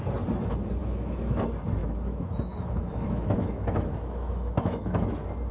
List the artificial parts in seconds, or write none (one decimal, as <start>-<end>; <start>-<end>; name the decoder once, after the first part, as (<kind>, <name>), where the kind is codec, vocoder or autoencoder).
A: 0.8-1.4 (autoencoder, DAC-VAE); 1.8-5.1